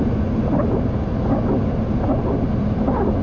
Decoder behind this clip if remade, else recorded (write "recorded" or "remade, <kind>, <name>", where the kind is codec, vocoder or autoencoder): recorded